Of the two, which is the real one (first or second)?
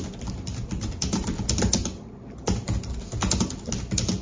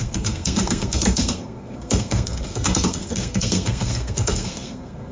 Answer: first